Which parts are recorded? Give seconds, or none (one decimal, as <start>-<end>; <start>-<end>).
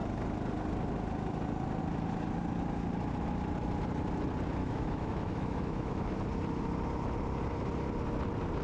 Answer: 0.0-4.6; 6.1-8.6